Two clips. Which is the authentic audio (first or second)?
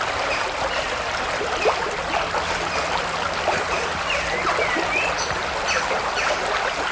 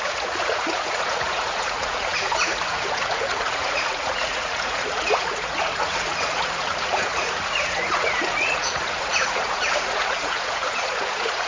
first